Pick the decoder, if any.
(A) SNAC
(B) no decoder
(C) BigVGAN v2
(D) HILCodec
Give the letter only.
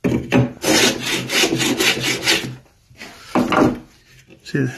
B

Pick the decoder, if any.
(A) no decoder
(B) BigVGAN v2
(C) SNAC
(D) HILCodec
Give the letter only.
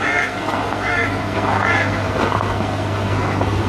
C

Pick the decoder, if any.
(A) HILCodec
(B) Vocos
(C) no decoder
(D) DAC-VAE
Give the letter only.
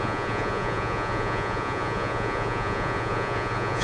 B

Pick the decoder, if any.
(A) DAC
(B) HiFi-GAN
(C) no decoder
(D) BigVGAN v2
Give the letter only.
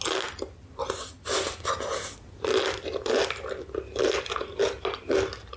C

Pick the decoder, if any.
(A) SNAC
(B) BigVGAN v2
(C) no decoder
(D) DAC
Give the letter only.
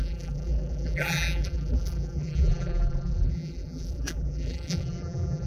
B